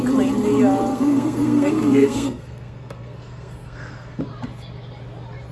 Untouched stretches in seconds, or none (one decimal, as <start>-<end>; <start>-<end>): 0.0-0.9; 4.2-5.5